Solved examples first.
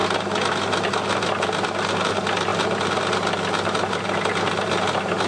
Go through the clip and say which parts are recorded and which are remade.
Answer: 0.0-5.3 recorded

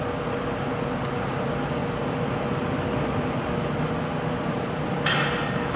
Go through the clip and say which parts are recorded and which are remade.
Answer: 0.0-5.8 recorded